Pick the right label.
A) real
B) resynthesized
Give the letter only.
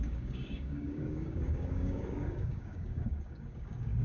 B